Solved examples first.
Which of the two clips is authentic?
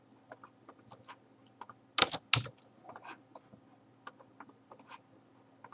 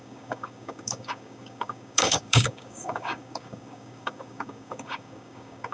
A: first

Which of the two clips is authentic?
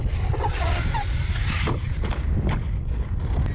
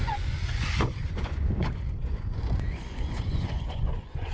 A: first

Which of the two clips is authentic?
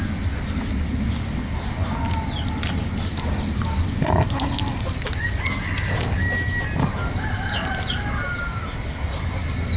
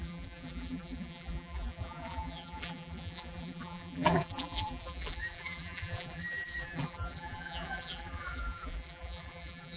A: first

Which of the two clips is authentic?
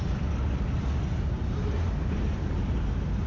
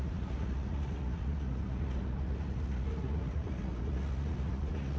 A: first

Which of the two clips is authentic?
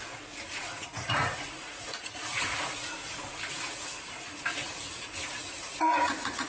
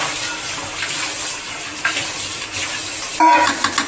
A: second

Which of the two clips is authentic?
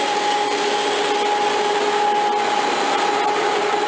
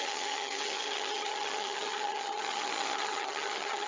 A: first